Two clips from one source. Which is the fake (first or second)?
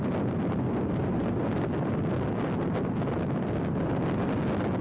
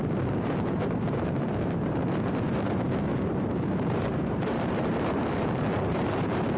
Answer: second